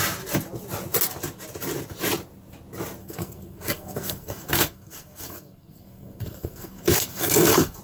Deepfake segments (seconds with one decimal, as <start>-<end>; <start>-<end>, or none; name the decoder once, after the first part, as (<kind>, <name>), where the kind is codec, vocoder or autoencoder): 3.0-7.8 (codec, SNAC)